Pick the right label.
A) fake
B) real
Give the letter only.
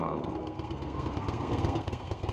A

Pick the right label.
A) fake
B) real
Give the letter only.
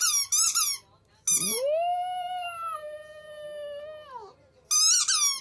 B